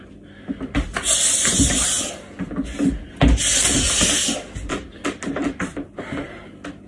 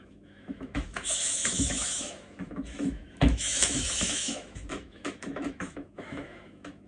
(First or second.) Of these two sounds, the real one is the first